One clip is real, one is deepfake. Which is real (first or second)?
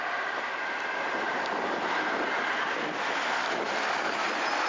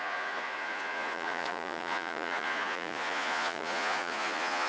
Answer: first